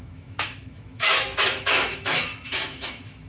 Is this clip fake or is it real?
fake